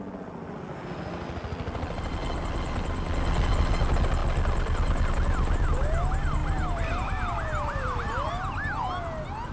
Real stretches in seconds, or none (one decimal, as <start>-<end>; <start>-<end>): 0.0-2.2; 3.1-4.2; 5.1-6.4; 8.3-9.5